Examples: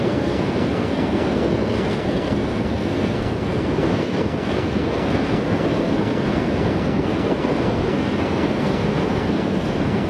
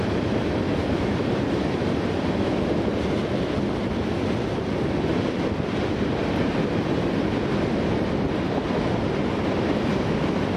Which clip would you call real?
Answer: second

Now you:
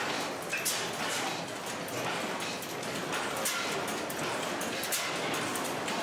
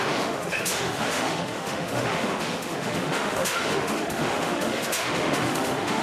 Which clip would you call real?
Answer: first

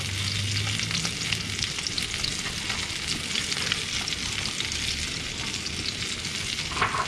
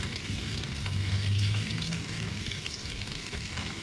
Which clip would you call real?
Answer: first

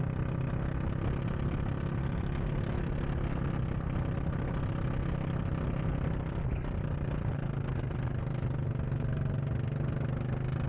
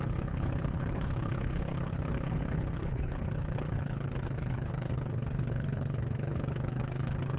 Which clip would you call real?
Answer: first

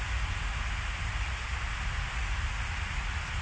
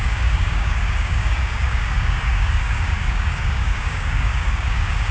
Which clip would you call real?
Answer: first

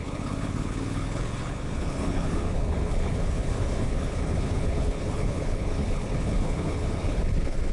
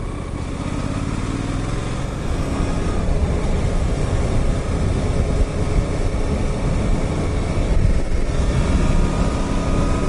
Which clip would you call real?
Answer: second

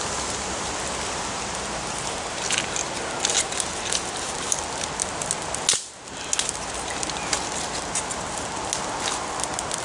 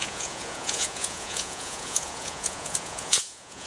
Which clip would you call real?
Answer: first